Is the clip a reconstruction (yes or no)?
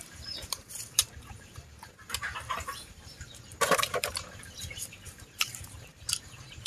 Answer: yes